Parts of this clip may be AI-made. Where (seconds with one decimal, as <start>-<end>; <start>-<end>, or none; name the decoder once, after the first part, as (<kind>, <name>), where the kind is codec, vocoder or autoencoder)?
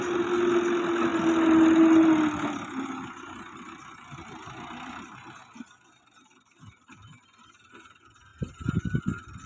none